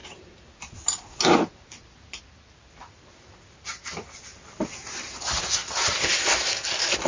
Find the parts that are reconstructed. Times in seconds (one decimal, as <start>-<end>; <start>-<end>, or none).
0.0-2.2